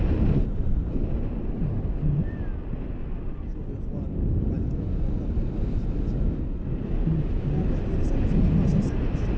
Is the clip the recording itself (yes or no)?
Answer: yes